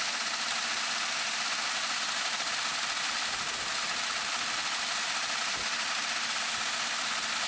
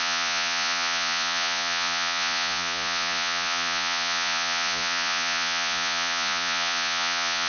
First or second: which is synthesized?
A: second